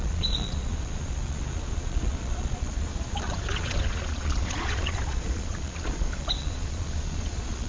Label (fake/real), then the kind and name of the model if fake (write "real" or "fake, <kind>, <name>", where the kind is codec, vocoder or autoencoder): fake, vocoder, Vocos